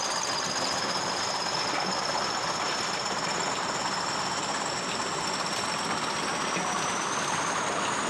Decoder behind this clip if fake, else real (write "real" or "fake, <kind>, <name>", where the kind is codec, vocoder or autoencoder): real